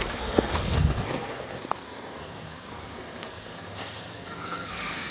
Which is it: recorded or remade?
remade